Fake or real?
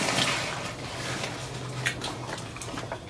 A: real